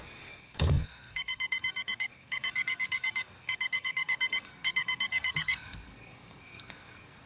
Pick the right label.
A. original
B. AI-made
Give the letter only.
B